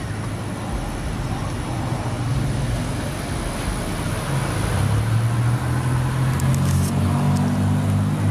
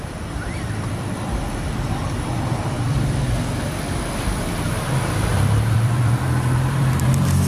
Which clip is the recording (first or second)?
first